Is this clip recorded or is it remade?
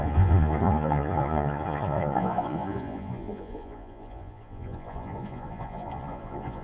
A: remade